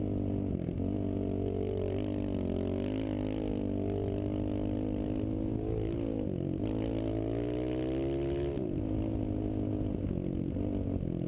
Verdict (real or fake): real